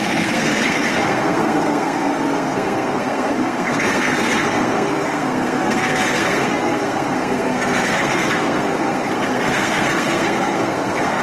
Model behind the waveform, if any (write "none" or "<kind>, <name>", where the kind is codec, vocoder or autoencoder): codec, SNAC